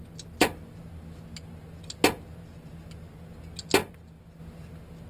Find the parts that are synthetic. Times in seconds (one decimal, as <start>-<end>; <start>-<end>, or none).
none